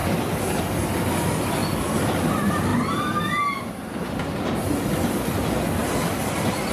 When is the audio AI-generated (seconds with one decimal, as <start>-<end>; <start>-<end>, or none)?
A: 0.0-0.6; 1.6-2.3; 5.8-6.7

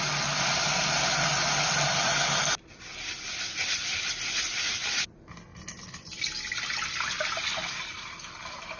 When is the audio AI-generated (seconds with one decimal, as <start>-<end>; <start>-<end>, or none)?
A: none

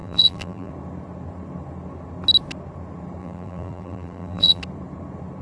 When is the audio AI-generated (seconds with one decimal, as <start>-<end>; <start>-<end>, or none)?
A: 0.0-0.7; 3.2-4.6